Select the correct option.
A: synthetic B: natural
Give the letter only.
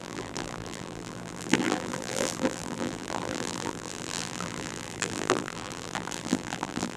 A